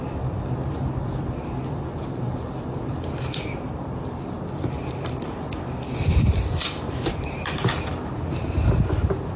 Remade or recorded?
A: remade